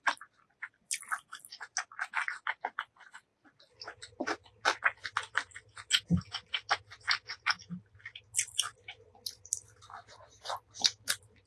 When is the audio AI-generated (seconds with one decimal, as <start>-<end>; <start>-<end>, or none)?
none